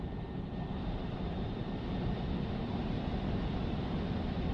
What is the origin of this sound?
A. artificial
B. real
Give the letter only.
A